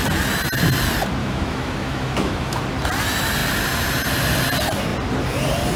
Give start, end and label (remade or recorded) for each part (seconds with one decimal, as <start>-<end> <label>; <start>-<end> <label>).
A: 0.0-1.2 recorded; 1.2-2.6 remade; 2.6-5.8 recorded